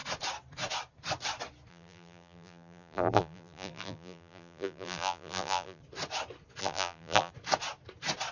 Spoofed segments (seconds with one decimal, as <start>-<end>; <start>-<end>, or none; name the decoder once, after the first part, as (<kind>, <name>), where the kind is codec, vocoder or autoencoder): 1.7-5.8 (vocoder, BigVGAN v2); 6.6-7.3

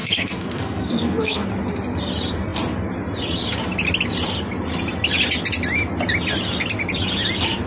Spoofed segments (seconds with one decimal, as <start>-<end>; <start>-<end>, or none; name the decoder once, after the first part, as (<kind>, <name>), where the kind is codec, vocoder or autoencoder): 0.0-1.5 (codec, SNAC)

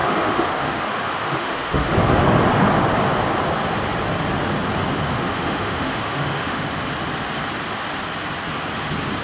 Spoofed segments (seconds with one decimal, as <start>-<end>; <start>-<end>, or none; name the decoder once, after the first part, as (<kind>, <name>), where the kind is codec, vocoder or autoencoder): 0.0-1.9 (autoencoder, DAC-VAE); 5.1-6.7